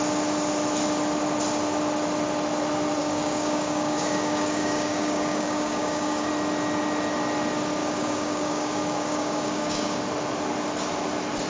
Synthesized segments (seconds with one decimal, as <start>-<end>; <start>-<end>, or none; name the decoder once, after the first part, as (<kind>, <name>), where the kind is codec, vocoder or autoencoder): 3.0-6.3 (codec, DAC); 7.8-10.0